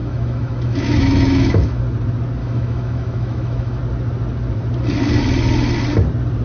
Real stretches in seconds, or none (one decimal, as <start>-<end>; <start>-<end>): 1.8-2.4; 3.8-6.4